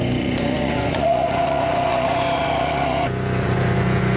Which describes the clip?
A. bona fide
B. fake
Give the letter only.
B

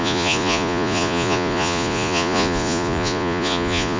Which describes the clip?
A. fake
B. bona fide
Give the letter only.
A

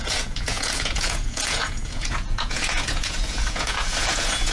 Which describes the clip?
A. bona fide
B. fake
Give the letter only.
B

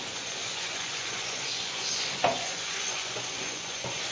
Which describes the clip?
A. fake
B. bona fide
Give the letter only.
A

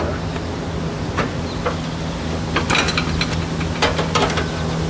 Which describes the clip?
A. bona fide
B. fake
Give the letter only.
A